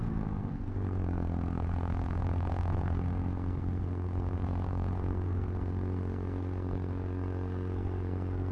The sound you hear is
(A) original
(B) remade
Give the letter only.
B